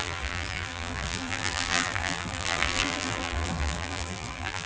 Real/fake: fake